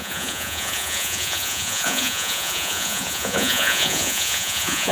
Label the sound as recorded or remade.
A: remade